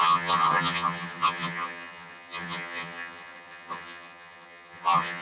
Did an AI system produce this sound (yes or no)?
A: yes